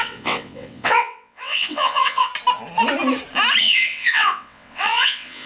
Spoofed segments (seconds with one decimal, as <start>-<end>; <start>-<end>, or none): 0.0-2.3; 3.6-5.5